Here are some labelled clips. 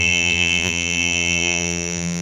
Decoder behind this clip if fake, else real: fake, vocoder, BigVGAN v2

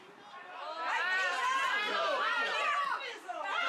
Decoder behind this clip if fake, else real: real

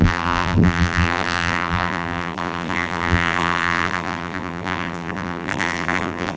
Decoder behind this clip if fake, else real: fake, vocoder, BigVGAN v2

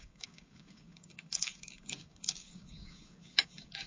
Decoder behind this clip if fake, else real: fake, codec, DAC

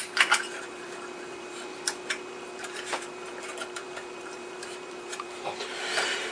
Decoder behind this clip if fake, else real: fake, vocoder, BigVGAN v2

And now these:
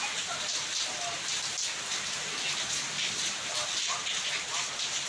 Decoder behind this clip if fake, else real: real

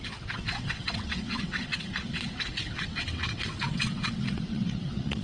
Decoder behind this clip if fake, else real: fake, vocoder, WaveNeXt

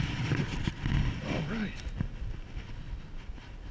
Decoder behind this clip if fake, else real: real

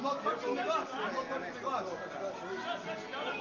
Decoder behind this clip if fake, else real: real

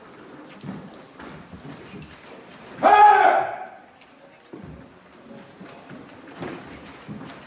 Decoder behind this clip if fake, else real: real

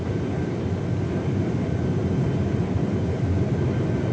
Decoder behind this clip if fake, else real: real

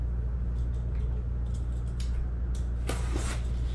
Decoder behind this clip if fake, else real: real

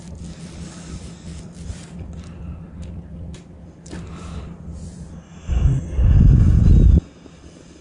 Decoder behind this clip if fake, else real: real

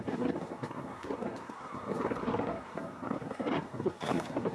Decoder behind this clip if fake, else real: fake, codec, SNAC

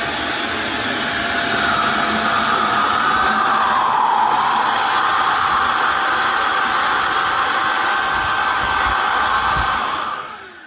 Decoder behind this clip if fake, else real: real